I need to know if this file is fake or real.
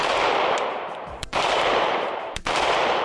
fake